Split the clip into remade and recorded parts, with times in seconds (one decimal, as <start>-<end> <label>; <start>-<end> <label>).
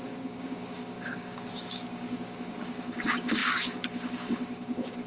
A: 0.0-5.1 remade